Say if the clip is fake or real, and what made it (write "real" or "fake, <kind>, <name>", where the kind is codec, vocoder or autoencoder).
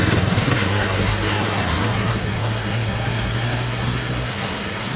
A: fake, codec, SNAC